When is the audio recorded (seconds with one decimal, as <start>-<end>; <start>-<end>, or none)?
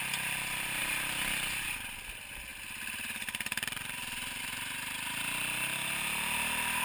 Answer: 0.0-6.8